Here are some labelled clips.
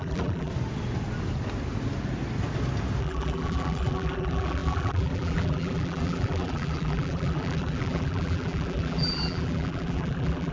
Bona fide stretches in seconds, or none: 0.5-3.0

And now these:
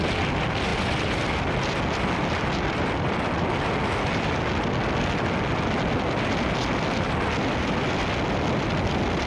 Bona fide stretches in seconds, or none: 0.0-9.3

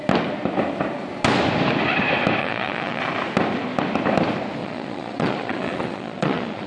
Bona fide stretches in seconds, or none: 0.0-2.4; 3.0-4.6

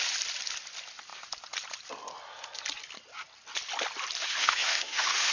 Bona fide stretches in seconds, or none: 0.0-4.2